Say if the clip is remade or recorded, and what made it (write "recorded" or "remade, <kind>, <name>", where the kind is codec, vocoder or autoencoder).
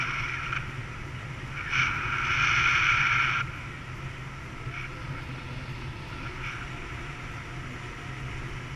recorded